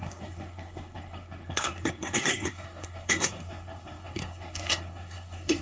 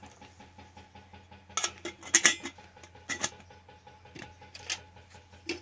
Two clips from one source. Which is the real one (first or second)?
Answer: second